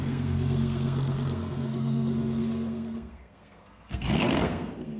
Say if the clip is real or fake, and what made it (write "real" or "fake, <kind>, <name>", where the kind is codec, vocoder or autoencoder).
fake, codec, SNAC